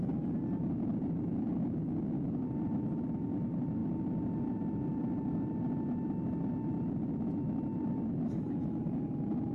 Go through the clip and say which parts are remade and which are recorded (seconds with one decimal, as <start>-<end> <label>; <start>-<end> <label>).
0.0-9.5 recorded